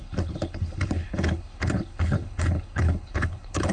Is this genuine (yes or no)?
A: no